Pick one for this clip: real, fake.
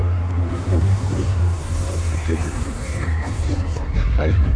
fake